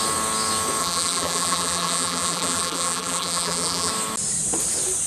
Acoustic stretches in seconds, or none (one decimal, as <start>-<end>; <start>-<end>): 0.0-0.8; 3.9-5.1